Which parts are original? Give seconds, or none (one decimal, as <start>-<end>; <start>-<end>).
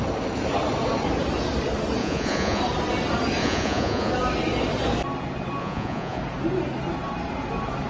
0.0-2.0; 2.6-3.4; 4.1-5.6; 6.2-7.9